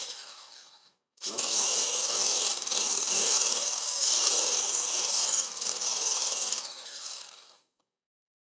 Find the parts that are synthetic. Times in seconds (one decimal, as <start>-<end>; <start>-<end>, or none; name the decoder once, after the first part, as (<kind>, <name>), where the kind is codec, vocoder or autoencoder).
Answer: 0.0-8.5 (codec, DAC)